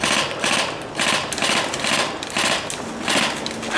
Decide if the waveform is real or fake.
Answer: real